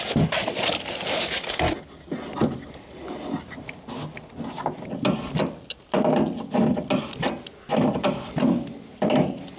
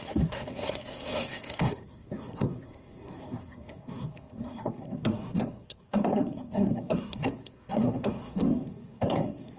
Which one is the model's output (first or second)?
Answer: second